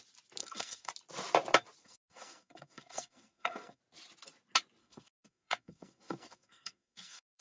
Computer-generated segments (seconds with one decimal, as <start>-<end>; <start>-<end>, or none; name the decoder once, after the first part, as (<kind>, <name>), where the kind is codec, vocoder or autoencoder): 0.4-0.9 (codec, SNAC); 1.8-3.8; 4.8-7.4